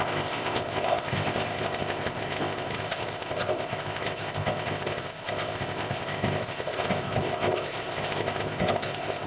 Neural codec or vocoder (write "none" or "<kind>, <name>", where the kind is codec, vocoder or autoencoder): codec, ZipCodec